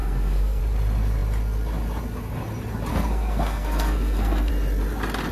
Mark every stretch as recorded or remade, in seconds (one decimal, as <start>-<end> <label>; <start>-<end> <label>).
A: 0.0-0.6 remade; 0.6-2.9 recorded; 2.9-4.5 remade; 4.5-5.3 recorded